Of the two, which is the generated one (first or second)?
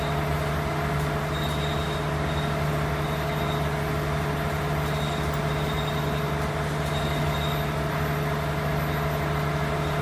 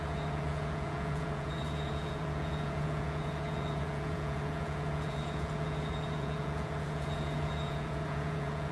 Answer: second